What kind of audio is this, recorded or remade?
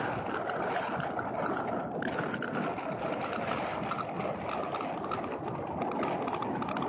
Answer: recorded